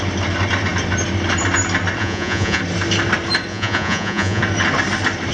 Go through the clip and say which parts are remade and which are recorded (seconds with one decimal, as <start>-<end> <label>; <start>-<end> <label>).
0.0-2.0 recorded; 2.0-2.6 remade; 2.6-3.5 recorded; 3.5-4.4 remade; 4.4-5.3 recorded